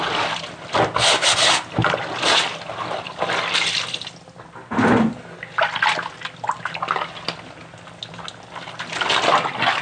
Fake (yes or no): no